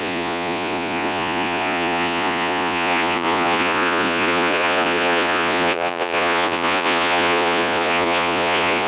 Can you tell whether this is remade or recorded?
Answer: remade